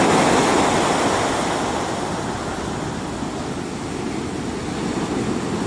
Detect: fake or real real